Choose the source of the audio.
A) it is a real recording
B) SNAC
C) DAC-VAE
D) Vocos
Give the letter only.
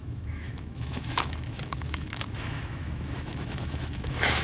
C